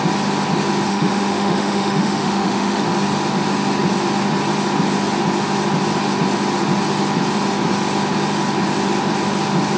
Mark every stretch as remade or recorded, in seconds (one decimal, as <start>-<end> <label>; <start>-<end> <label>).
0.0-0.9 recorded; 0.9-2.8 remade; 2.8-9.8 recorded

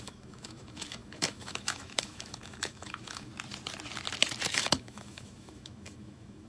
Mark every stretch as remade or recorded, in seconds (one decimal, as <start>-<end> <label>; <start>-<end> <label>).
0.0-3.3 remade; 3.3-4.5 recorded; 4.5-6.5 remade

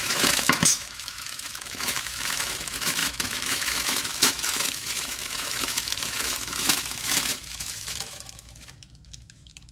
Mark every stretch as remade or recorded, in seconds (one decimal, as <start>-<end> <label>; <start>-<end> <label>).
0.0-9.7 remade

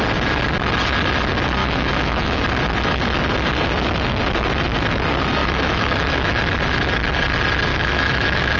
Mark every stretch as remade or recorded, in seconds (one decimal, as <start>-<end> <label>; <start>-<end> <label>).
0.0-1.6 recorded; 1.6-2.4 remade; 2.4-5.4 recorded; 5.4-6.4 remade; 6.4-7.7 recorded; 7.7-8.6 remade

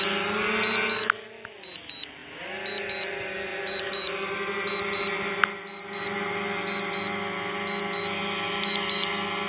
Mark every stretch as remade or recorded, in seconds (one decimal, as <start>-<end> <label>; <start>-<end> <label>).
0.0-9.5 recorded

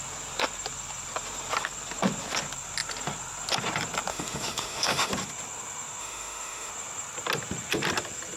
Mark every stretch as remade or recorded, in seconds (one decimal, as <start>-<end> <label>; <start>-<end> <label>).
0.0-4.1 recorded; 4.1-5.1 remade; 5.1-6.0 recorded; 6.0-6.7 remade; 6.7-8.4 recorded

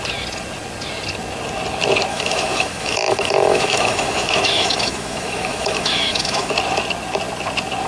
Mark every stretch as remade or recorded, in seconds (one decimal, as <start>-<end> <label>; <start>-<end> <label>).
0.0-2.1 recorded; 2.1-6.5 remade; 6.5-7.9 recorded